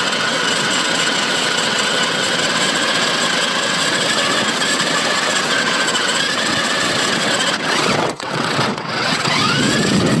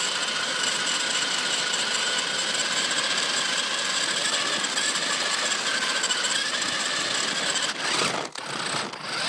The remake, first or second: first